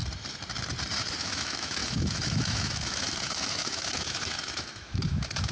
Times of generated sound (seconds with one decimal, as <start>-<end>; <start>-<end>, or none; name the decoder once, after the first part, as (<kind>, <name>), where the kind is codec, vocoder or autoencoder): 1.2-5.5 (autoencoder, DAC-VAE)